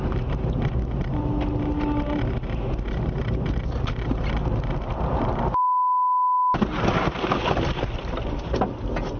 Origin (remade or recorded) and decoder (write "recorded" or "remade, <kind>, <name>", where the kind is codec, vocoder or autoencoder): recorded